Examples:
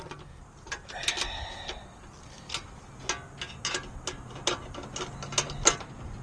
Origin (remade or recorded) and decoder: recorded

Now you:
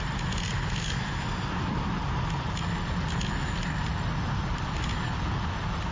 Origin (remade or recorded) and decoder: recorded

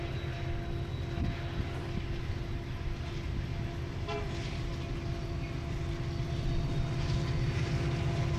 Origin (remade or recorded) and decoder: recorded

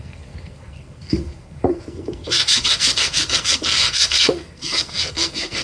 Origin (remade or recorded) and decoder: remade, codec, SNAC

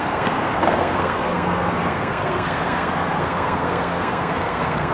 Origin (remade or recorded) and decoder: remade, codec, SNAC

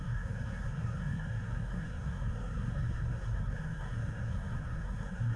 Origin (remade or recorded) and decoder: remade, codec, SNAC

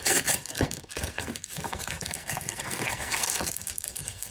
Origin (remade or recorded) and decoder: remade, codec, SNAC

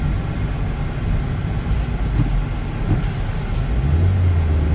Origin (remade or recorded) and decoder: recorded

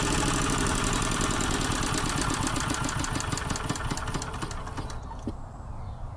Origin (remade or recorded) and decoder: recorded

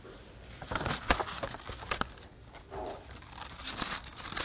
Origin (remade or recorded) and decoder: recorded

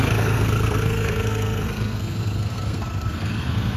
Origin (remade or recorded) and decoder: remade, codec, SNAC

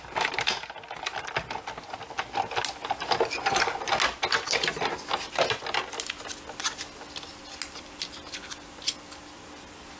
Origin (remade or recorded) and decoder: recorded